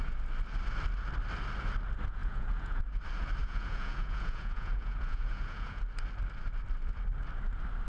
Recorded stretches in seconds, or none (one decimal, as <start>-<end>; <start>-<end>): 0.0-2.2; 2.8-3.4; 5.8-7.9